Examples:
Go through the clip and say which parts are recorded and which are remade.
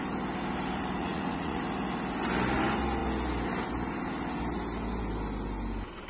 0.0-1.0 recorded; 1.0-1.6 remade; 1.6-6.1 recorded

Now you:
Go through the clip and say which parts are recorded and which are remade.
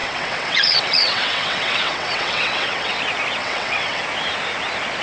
0.0-3.0 remade; 3.0-3.4 recorded; 3.4-4.0 remade; 4.0-5.0 recorded